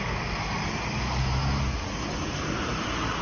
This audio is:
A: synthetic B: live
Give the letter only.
B